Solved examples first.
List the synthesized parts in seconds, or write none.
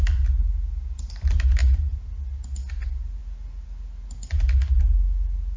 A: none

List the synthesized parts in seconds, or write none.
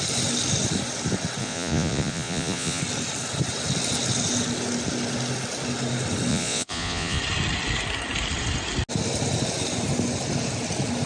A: 1.4-2.8 (vocoder, Vocos); 6.3-7.2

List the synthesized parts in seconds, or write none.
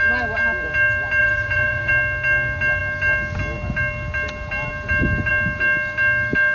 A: 1.2-1.9 (vocoder, Vocos)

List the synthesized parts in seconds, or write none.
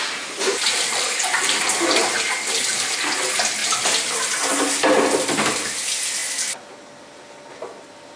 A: none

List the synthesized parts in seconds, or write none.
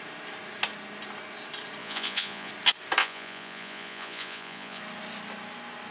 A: 1.8-2.5 (vocoder, Vocos); 3.0-4.8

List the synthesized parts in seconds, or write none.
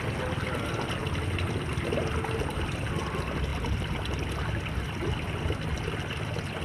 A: none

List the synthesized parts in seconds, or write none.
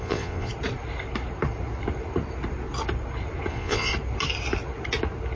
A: 0.0-0.5 (vocoder, Vocos); 3.5-3.9